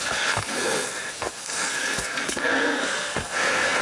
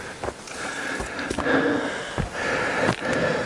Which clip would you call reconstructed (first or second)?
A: first